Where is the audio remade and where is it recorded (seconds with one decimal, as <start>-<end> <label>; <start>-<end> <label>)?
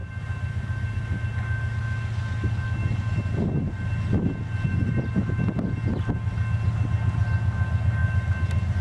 0.0-8.8 recorded